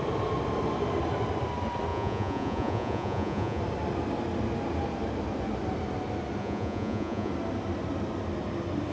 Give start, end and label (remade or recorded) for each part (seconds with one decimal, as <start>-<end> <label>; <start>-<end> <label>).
0.0-1.9 recorded; 1.9-3.6 remade; 3.6-6.4 recorded; 6.4-7.3 remade; 7.3-8.9 recorded